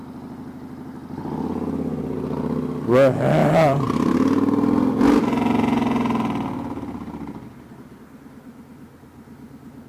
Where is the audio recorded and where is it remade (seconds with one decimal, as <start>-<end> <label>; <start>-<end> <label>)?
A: 0.0-3.4 recorded; 3.4-4.1 remade; 4.1-9.9 recorded